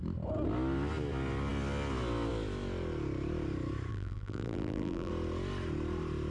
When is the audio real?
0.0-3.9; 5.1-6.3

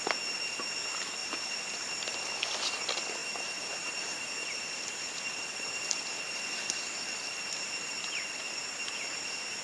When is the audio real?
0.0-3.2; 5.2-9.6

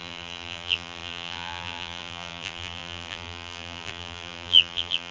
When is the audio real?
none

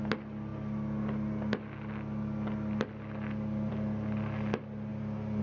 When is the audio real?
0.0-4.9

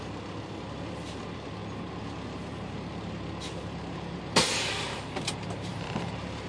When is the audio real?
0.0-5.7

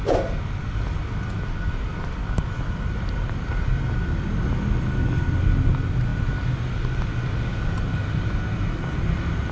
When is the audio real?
0.0-9.5

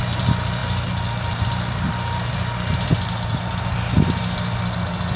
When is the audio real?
0.0-5.2

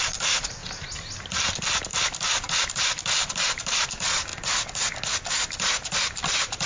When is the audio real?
0.6-1.2; 1.9-2.7; 4.3-5.3